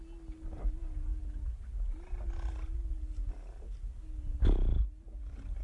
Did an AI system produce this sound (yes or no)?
no